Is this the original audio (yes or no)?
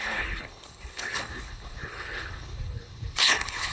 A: no